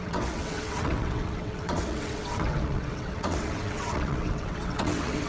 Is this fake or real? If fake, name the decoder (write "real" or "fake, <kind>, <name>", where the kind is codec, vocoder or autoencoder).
fake, vocoder, WaveNeXt